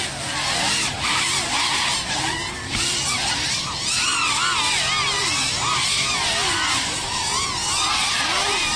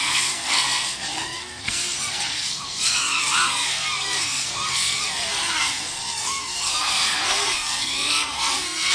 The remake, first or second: second